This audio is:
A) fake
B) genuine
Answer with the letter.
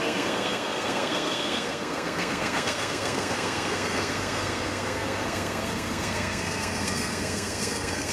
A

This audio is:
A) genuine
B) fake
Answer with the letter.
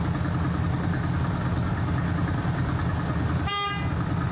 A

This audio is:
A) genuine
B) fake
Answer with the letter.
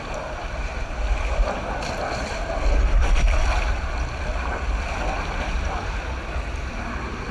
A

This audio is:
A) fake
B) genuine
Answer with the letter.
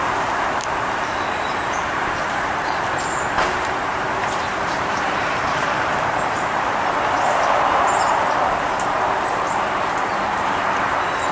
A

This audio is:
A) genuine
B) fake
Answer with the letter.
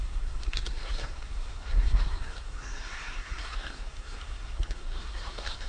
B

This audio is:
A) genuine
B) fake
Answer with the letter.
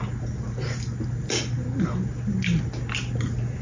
A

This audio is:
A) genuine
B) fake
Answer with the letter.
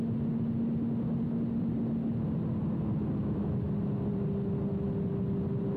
A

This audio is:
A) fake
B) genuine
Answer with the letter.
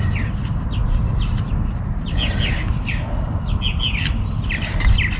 B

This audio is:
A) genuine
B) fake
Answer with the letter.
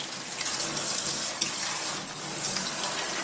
A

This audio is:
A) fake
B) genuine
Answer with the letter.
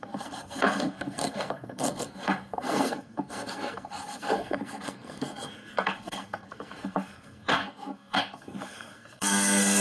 A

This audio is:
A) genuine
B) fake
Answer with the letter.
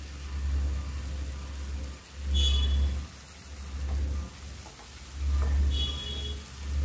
A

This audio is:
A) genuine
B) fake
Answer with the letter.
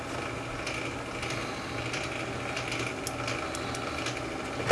A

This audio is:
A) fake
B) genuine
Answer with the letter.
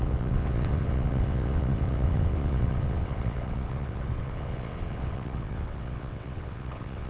A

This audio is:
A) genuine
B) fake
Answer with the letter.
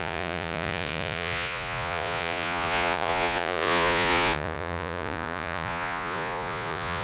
B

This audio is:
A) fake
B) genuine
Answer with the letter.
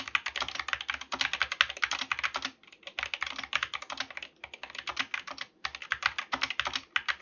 B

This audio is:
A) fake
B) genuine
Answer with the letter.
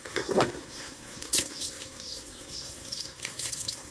A